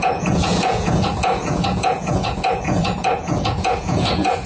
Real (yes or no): no